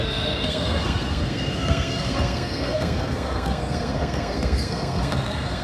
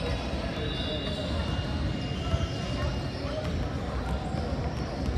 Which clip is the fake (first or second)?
first